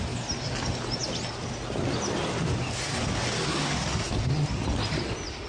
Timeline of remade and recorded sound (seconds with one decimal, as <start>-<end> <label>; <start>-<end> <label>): 0.0-5.5 recorded